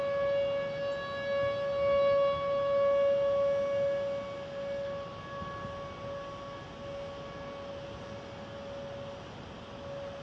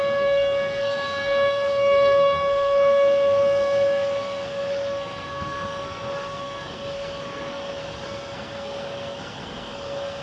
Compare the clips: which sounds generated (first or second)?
second